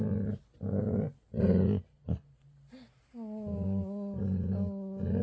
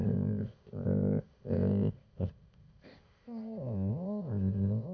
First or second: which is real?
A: first